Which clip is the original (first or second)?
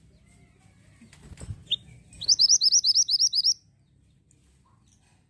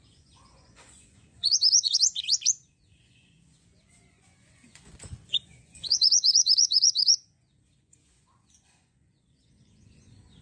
first